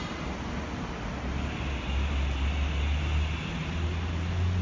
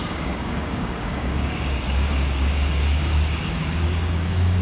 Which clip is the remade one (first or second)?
second